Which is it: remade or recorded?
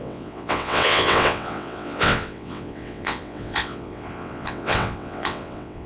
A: remade